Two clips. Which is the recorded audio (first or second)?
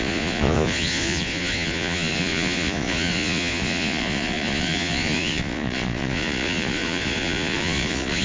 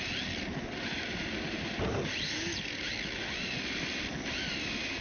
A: second